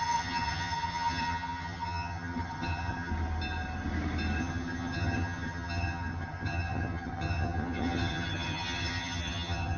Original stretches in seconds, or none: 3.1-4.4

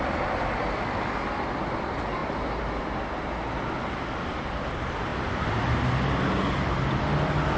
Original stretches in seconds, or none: 0.0-7.6